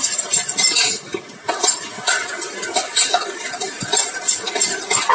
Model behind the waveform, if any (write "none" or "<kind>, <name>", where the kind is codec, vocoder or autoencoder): none